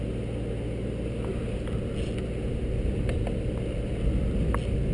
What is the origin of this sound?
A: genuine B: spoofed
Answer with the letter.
A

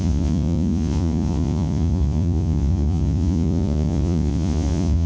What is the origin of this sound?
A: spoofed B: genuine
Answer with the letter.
A